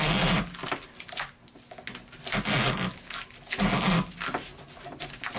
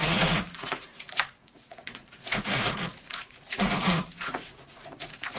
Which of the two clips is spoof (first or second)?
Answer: second